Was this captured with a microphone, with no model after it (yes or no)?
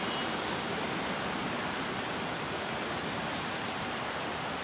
yes